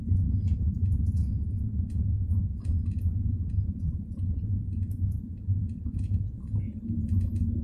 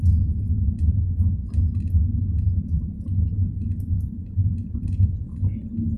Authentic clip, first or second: second